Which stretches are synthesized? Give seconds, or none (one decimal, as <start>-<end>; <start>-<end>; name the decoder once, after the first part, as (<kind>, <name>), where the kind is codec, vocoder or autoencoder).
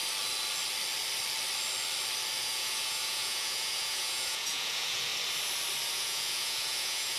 2.4-5.1 (vocoder, Vocos); 5.9-7.2